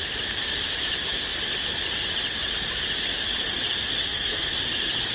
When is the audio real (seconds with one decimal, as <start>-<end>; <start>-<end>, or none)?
0.0-3.9; 4.5-5.1